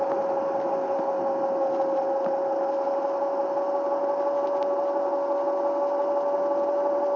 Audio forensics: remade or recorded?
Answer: recorded